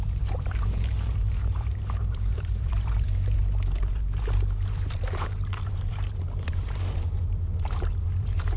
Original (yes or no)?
no